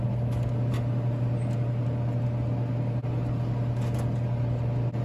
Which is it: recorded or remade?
recorded